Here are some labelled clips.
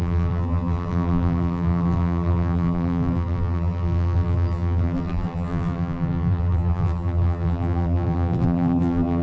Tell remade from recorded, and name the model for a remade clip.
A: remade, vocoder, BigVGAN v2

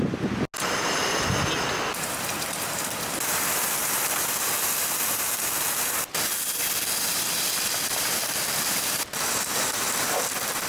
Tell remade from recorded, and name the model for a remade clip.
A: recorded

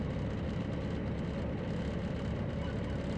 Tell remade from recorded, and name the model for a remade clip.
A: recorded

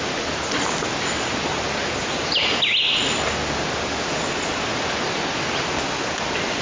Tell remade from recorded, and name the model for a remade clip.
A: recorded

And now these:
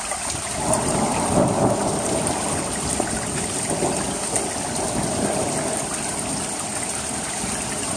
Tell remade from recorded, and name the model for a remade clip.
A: recorded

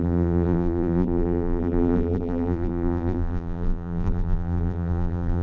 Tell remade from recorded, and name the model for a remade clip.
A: remade, vocoder, BigVGAN v2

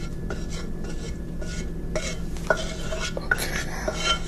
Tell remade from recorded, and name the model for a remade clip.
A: recorded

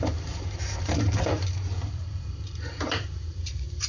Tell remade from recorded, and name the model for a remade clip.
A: remade, vocoder, BigVGAN v2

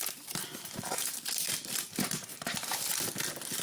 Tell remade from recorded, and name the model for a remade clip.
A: remade, vocoder, BigVGAN v2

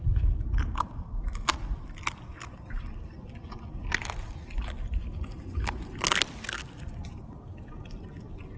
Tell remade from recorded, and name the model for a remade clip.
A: recorded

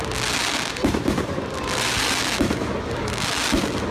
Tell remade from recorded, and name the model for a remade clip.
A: recorded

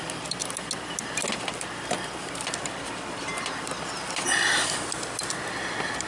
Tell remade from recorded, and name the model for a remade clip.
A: recorded